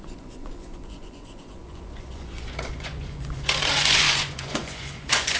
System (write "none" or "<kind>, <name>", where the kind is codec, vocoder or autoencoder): vocoder, Vocos